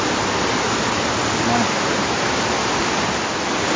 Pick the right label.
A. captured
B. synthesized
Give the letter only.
A